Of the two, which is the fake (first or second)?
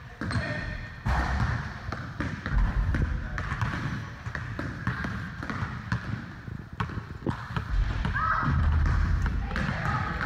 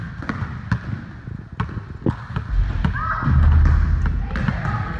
first